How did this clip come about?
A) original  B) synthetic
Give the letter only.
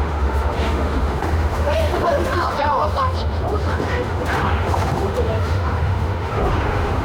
B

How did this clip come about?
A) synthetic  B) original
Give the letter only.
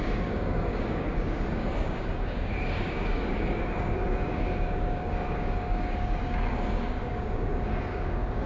A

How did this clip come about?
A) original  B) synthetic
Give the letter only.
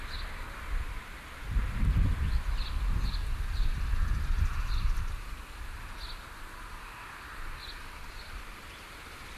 A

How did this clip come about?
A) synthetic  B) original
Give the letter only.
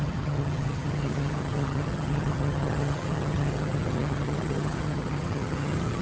A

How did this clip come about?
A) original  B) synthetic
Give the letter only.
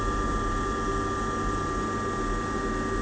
A